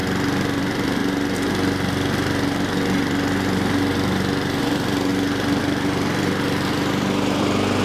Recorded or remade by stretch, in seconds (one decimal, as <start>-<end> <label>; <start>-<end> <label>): 0.0-0.6 recorded; 0.6-1.0 remade; 1.0-4.6 recorded; 4.6-5.1 remade; 5.1-5.6 recorded; 5.6-6.1 remade; 6.1-6.9 recorded; 6.9-7.8 remade